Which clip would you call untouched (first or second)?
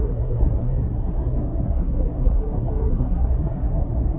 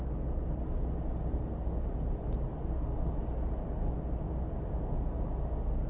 second